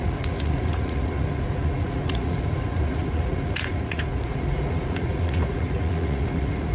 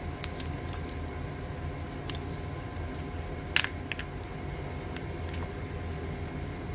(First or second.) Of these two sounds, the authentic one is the second